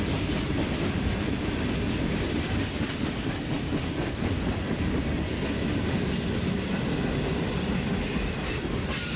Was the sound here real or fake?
real